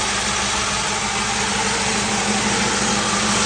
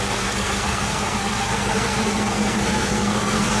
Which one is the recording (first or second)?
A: first